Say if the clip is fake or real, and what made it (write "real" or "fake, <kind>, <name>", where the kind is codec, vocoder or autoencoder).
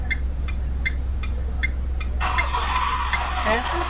real